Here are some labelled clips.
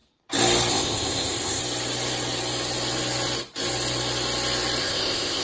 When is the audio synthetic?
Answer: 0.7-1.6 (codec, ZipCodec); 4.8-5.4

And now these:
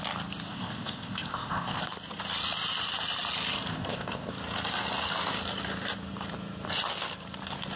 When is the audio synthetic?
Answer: 0.5-1.8 (codec, ZipCodec); 3.7-4.3

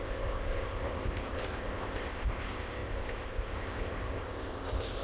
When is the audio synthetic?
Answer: 0.0-5.0 (codec, ZipCodec)

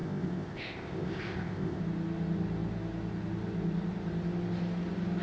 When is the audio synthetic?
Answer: 0.0-1.8 (codec, ZipCodec)

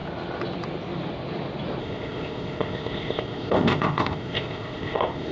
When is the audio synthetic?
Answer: 1.8-5.3 (codec, ZipCodec)

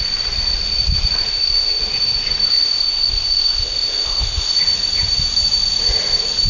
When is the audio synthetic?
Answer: 1.3-1.8 (codec, ZipCodec); 2.5-4.6

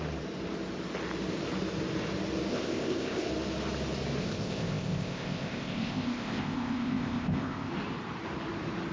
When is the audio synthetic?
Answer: 2.5-3.3 (codec, ZipCodec); 4.2-7.7